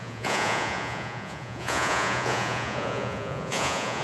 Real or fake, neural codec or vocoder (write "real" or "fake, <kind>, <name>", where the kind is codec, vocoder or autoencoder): fake, vocoder, Vocos